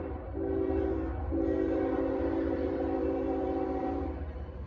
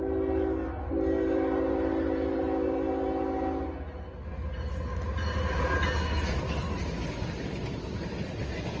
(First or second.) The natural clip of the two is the second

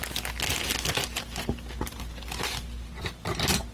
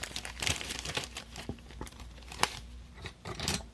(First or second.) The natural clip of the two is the first